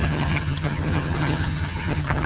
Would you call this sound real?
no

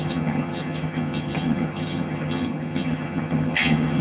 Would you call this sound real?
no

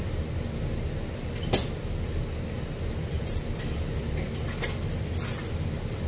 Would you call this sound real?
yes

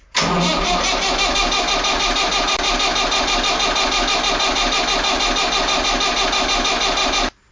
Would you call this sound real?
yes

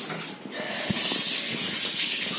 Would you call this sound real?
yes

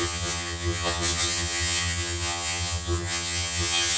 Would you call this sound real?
no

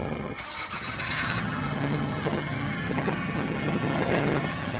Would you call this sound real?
no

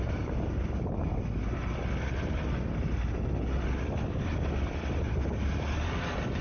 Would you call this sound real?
yes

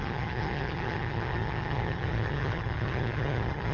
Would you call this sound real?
no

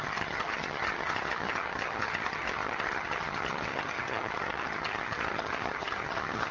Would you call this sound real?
no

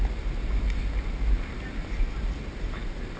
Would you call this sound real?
yes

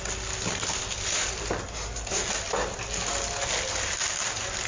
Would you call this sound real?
yes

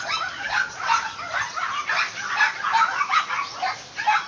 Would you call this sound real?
yes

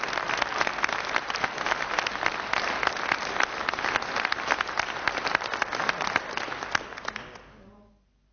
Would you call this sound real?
yes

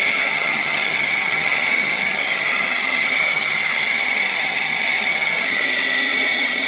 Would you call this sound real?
no